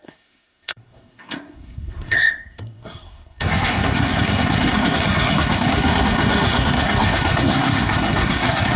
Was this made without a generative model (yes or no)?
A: no